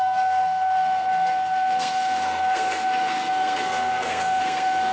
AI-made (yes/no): yes